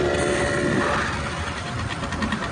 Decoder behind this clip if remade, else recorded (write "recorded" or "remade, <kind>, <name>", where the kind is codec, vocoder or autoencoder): recorded